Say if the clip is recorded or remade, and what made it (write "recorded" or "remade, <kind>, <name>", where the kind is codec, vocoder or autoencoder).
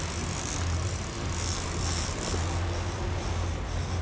recorded